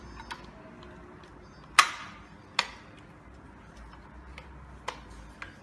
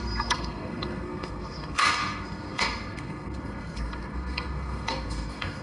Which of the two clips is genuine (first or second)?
first